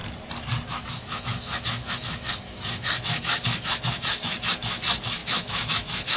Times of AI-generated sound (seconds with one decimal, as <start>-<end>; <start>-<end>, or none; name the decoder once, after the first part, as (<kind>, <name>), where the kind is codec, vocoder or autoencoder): 0.7-6.2 (autoencoder, DAC-VAE)